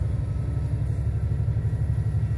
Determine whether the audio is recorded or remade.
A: recorded